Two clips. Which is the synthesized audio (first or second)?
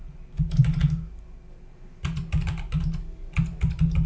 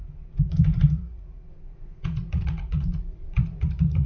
second